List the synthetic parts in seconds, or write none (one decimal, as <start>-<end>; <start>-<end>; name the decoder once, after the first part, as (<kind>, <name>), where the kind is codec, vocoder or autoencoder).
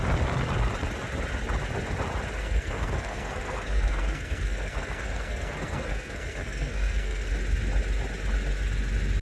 2.4-7.3 (codec, SNAC)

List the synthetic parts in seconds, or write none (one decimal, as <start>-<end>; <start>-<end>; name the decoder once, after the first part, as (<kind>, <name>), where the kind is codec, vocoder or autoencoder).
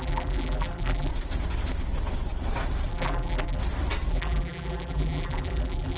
0.0-1.1 (vocoder, BigVGAN v2); 2.9-3.6; 4.1-6.0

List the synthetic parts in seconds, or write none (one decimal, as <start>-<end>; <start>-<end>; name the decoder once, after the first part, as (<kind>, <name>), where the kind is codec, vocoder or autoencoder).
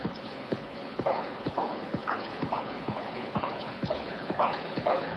0.0-5.2 (codec, HILCodec)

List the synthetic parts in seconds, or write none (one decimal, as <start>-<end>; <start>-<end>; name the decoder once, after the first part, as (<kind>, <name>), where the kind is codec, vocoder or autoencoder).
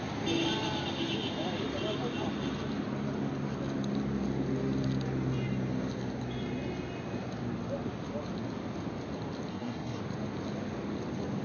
9.5-10.0 (codec, SNAC)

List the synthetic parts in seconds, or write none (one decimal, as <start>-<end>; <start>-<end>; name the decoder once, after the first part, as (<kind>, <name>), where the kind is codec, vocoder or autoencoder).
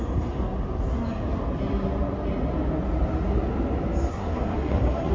4.1-5.1 (codec, SNAC)